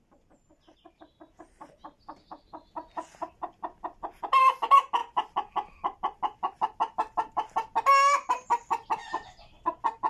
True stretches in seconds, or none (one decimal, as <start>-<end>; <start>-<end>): 0.0-10.1